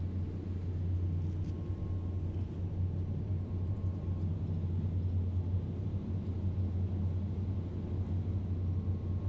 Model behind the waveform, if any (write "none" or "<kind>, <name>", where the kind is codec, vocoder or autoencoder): none